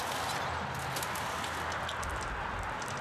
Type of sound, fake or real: real